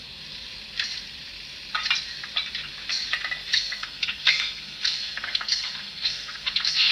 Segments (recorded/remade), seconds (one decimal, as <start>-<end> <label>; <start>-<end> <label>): 0.0-3.5 recorded; 3.5-6.9 remade